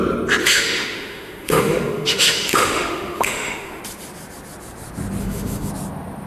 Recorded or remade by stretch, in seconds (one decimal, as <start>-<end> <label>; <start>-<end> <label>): 0.0-0.4 recorded; 0.4-3.8 remade; 3.8-5.2 recorded; 5.2-5.7 remade; 5.7-6.3 recorded